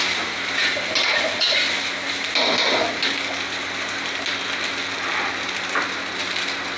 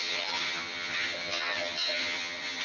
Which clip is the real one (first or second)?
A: first